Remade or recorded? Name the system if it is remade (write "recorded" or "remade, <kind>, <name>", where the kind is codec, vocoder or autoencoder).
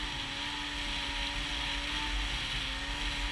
recorded